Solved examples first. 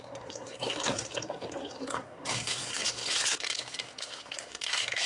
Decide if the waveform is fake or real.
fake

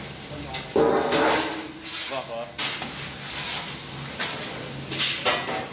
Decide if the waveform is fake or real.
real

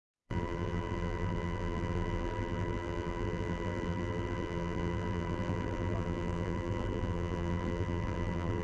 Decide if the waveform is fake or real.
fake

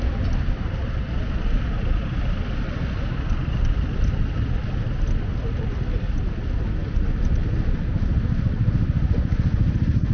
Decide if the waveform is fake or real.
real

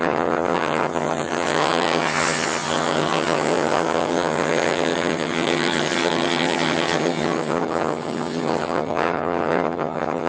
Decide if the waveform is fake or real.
fake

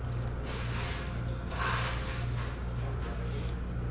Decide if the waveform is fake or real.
real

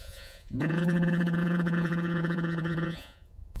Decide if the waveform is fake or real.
fake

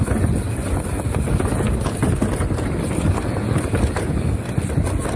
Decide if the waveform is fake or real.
real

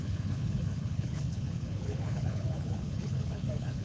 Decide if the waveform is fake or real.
fake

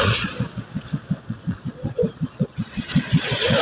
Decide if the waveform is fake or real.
fake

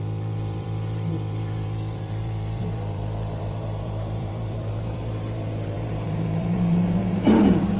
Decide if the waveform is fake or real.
fake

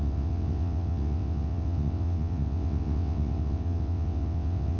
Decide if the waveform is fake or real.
fake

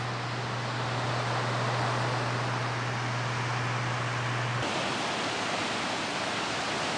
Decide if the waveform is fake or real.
real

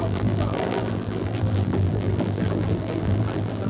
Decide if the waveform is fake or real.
fake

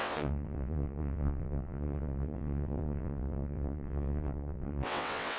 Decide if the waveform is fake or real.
fake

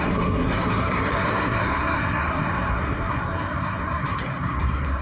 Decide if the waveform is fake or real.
fake